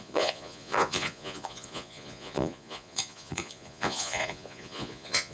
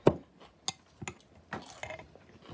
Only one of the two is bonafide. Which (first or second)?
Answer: second